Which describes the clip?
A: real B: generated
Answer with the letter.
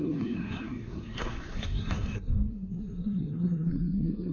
B